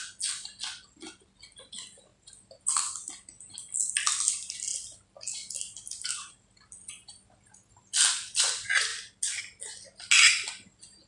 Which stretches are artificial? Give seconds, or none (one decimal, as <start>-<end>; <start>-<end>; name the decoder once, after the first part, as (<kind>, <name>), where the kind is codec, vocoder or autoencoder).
none